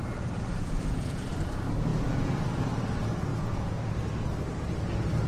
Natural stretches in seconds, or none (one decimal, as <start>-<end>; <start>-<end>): 0.0-0.5; 1.3-1.9; 2.6-3.3; 3.9-5.3